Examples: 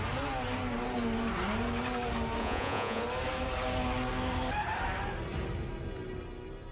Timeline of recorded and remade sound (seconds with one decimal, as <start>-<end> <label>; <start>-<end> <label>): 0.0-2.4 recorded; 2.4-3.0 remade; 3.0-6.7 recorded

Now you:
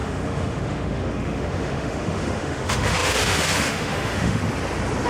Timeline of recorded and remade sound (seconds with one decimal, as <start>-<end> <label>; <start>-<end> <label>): 0.0-4.4 remade; 4.4-5.1 recorded

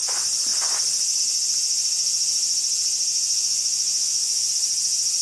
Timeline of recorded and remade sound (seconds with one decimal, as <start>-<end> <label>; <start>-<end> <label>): 0.0-3.1 recorded; 3.1-4.5 remade; 4.5-5.2 recorded